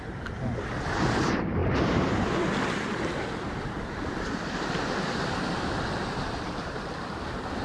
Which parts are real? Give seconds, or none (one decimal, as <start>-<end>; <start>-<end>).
none